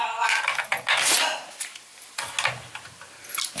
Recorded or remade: recorded